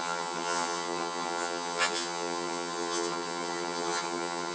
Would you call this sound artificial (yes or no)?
yes